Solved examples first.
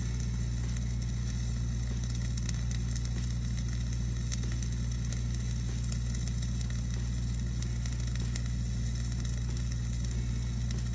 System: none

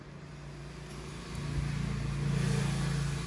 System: none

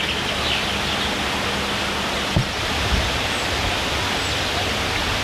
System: none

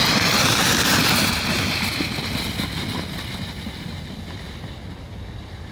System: none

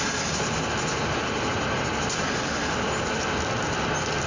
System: none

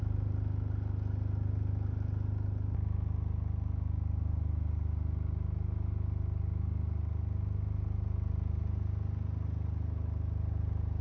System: none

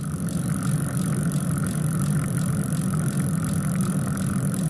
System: none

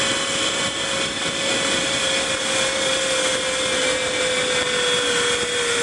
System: none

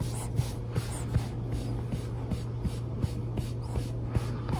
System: none